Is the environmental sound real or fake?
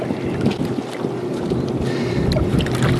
real